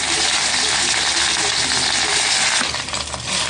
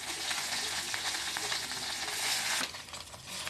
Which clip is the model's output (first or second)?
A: second